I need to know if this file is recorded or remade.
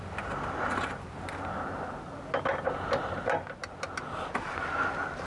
recorded